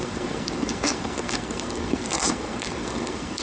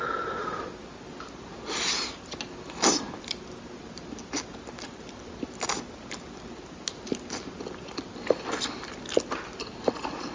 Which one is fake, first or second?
first